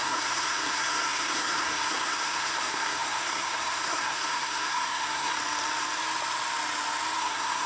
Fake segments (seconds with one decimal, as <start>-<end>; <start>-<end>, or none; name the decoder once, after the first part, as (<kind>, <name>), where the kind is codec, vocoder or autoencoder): 0.0-5.3 (codec, SNAC); 7.2-7.7